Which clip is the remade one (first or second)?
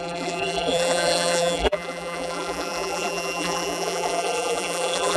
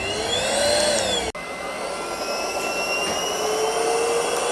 first